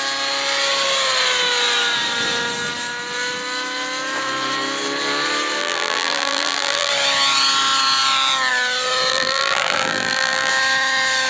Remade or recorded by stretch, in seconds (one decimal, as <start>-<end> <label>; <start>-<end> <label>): 0.0-5.6 recorded; 5.6-6.9 remade; 6.9-9.1 recorded; 9.1-10.5 remade; 10.5-11.3 recorded